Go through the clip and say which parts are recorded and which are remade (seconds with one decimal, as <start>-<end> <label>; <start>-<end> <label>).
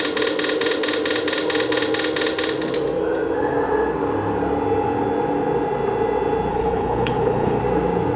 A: 0.0-6.5 recorded; 6.5-7.6 remade; 7.6-8.2 recorded